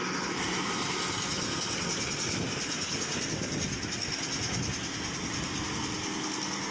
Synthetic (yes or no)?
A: no